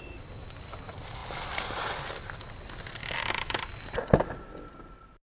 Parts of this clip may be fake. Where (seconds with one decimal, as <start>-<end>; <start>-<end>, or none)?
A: 3.0-3.6